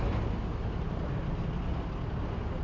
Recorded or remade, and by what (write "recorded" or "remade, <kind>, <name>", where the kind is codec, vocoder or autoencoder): recorded